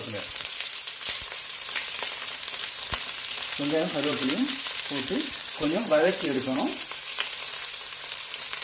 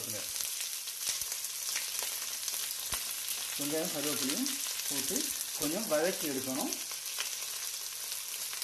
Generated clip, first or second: first